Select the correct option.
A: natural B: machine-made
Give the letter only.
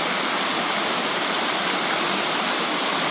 A